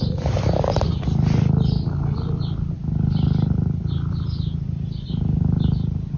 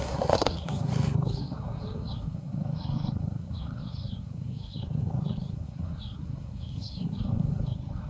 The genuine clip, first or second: first